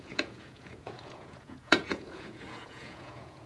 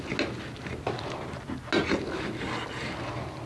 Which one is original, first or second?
second